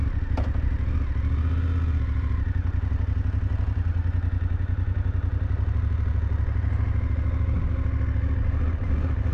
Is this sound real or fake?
real